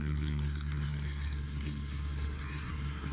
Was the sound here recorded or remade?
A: remade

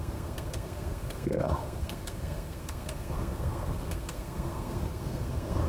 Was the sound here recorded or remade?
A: remade